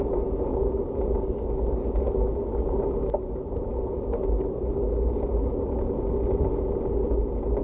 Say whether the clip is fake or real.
real